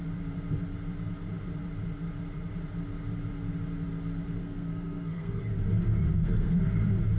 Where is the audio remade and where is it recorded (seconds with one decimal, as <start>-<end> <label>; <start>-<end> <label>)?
0.0-4.4 recorded; 4.4-5.4 remade; 5.4-6.1 recorded; 6.1-6.6 remade; 6.6-7.2 recorded